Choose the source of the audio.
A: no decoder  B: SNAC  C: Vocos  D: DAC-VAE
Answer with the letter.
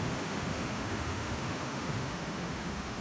D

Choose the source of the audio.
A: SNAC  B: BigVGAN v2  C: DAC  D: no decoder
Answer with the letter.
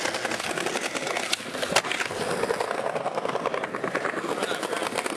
D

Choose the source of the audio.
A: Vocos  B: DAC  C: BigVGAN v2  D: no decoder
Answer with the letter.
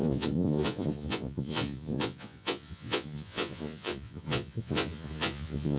A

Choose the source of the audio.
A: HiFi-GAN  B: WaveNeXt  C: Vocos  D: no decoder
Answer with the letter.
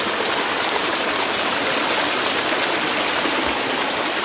D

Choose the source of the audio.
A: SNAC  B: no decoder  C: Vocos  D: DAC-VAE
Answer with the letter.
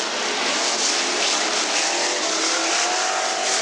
B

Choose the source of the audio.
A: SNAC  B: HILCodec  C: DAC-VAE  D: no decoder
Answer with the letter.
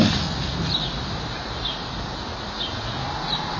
D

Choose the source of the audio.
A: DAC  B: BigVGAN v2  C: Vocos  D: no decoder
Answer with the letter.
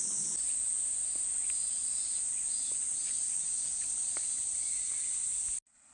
D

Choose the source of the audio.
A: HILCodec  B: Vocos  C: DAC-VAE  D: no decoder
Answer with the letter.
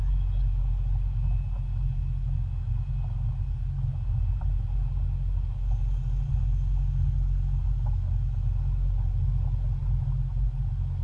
D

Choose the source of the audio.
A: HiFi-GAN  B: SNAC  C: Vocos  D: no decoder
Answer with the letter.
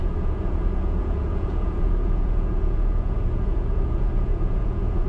C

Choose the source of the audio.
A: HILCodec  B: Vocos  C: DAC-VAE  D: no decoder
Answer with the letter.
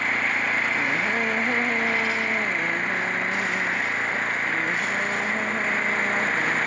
D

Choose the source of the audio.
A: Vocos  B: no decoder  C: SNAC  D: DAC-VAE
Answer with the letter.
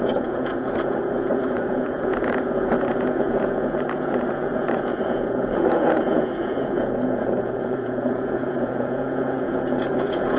A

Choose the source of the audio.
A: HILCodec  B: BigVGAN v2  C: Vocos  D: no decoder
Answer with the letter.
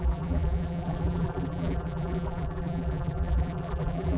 B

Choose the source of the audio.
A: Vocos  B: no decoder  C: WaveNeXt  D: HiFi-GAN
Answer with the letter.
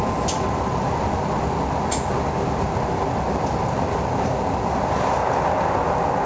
B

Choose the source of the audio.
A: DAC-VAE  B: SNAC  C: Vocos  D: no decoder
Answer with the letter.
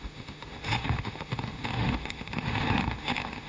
A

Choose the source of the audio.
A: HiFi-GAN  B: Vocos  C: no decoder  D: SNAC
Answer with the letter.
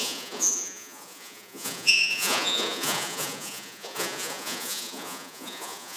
B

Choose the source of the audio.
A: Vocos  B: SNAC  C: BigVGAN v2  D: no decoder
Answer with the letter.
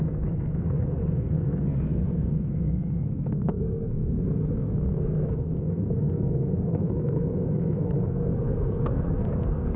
B